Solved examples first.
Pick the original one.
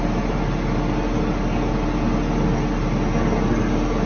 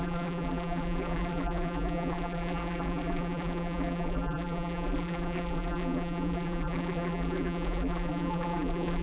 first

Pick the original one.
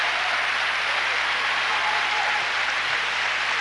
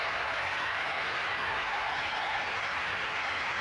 first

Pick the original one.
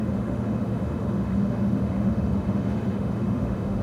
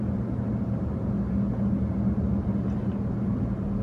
second